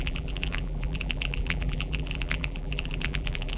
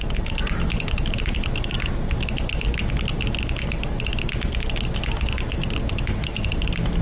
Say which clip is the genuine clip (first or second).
second